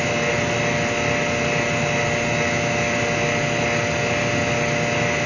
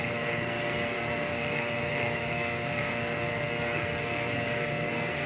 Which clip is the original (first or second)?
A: first